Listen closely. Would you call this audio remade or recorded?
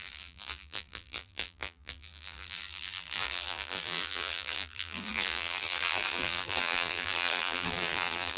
remade